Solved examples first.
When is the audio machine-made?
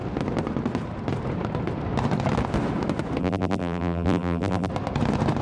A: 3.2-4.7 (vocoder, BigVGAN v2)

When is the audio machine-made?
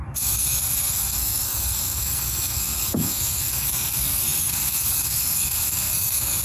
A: 0.0-6.4 (codec, SNAC)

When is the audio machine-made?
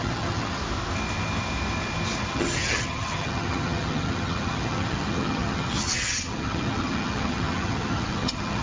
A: 0.0-0.6 (vocoder, HiFi-GAN); 2.3-8.6